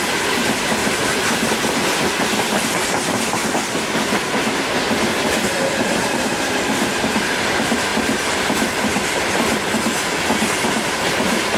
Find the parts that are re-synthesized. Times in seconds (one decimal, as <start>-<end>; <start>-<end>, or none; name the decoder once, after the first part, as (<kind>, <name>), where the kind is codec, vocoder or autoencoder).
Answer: 0.0-3.4 (vocoder, BigVGAN v2); 5.9-7.9; 8.4-11.6